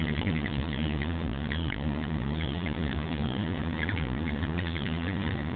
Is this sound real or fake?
fake